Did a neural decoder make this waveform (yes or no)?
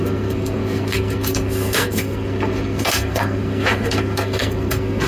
yes